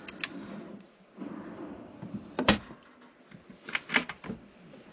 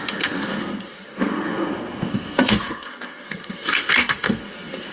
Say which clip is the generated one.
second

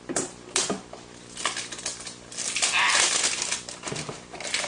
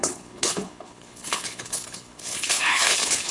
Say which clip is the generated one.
second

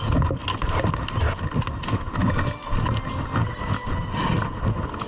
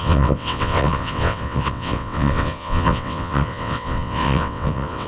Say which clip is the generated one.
second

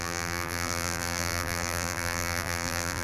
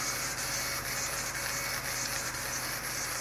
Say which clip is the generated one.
first